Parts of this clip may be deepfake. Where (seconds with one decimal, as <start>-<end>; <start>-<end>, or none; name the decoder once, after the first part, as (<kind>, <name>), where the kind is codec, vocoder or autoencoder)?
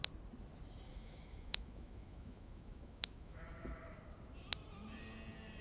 0.9-3.4 (autoencoder, DAC-VAE)